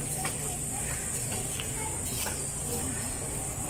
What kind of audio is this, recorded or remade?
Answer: recorded